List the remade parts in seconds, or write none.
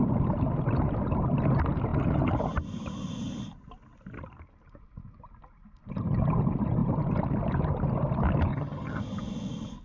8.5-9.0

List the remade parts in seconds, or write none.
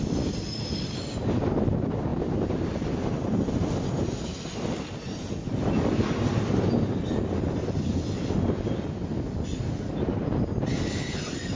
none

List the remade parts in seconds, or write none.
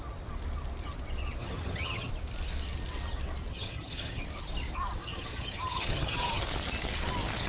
1.4-2.1; 3.5-4.2; 5.0-6.4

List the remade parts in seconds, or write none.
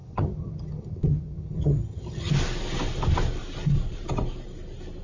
0.0-2.3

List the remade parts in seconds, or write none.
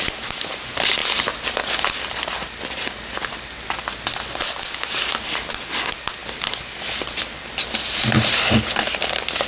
none